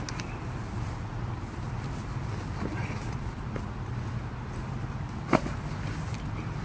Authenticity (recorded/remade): recorded